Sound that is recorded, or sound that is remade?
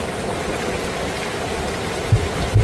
recorded